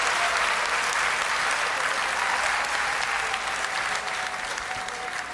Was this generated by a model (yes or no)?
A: no